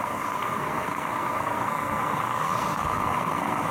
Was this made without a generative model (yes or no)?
no